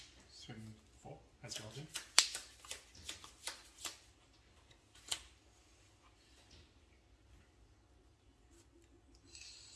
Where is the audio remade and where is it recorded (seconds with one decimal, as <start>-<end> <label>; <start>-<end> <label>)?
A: 0.0-9.8 recorded